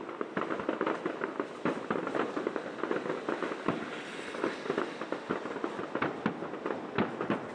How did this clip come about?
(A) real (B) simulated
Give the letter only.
A